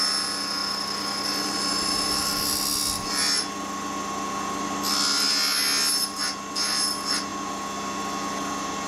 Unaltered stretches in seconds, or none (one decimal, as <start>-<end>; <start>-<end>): 0.0-8.9